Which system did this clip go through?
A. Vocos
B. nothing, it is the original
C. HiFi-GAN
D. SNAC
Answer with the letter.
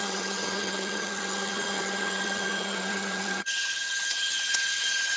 C